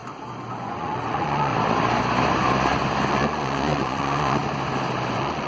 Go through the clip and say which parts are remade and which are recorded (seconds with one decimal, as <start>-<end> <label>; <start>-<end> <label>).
0.0-0.5 recorded; 0.5-1.5 remade; 1.5-3.1 recorded; 3.1-4.4 remade; 4.4-5.1 recorded; 5.1-5.5 remade